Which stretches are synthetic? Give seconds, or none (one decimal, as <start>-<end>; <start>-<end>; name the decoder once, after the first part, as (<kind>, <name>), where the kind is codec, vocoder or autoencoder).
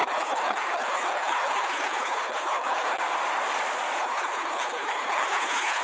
0.0-3.0 (codec, HILCodec); 4.0-5.8